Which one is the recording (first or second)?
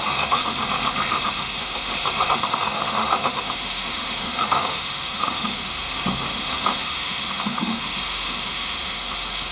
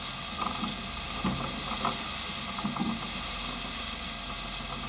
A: second